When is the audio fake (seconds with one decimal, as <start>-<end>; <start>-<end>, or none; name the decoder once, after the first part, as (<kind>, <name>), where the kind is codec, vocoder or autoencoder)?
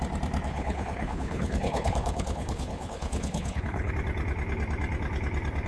0.5-3.9 (codec, HILCodec)